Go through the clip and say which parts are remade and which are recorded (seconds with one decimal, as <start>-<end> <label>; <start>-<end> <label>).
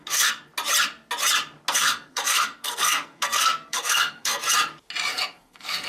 0.0-0.5 remade; 0.5-1.7 recorded; 1.7-4.4 remade; 4.4-5.1 recorded; 5.1-5.9 remade